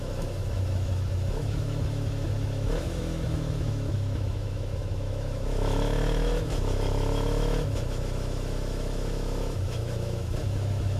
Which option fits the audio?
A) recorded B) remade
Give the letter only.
B